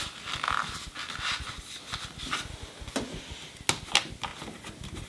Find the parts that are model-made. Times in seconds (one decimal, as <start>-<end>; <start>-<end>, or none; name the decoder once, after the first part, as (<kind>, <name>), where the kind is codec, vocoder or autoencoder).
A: none

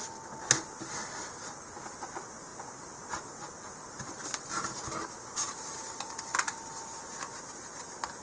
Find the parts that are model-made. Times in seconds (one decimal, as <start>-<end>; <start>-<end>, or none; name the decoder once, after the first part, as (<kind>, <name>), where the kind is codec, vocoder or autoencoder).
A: none